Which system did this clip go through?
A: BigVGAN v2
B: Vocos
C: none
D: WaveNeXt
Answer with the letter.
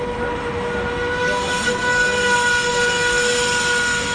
C